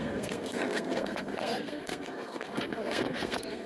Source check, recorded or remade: remade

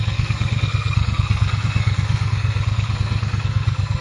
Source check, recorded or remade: remade